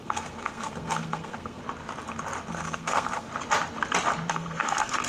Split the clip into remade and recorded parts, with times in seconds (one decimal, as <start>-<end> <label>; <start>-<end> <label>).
0.0-1.6 remade; 1.6-2.5 recorded; 2.5-3.3 remade; 3.3-4.3 recorded; 4.3-5.1 remade